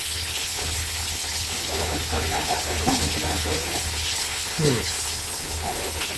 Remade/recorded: remade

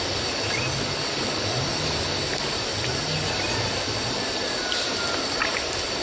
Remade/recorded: recorded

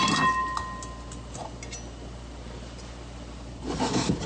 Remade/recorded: recorded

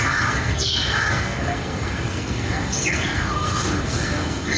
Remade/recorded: remade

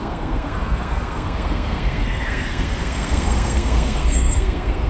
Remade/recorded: remade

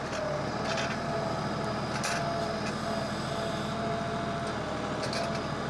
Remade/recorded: recorded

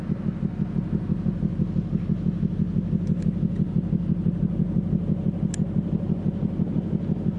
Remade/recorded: recorded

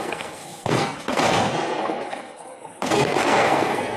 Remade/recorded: remade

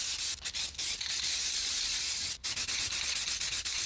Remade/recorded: recorded